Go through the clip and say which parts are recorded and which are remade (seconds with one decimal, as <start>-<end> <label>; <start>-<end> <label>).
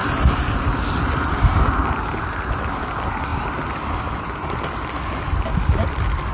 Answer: 0.0-6.3 recorded